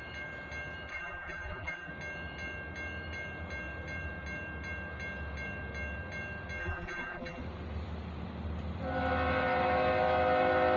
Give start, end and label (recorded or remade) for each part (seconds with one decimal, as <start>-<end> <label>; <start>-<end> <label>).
0.0-0.9 recorded; 0.9-1.9 remade; 1.9-6.6 recorded; 6.6-7.4 remade; 7.4-10.8 recorded